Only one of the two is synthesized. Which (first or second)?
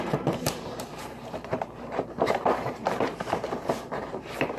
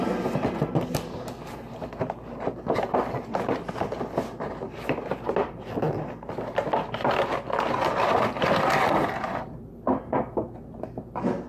first